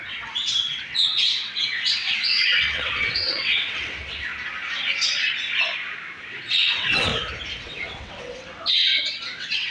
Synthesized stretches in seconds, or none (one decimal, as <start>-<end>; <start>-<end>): 0.0-4.3; 6.3-7.1; 7.6-9.7